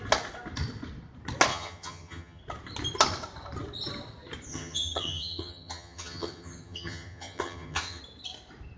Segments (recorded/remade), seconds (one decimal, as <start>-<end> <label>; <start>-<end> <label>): 0.0-1.5 recorded; 1.5-2.4 remade; 2.4-4.5 recorded; 4.5-8.0 remade; 8.0-8.8 recorded